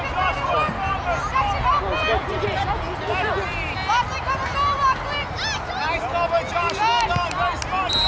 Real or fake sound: real